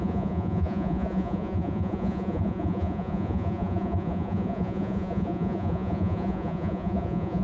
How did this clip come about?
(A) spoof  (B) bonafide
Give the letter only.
A